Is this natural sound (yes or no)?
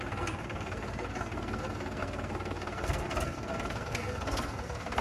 no